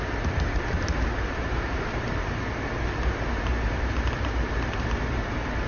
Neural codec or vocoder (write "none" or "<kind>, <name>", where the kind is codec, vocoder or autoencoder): vocoder, BigVGAN v2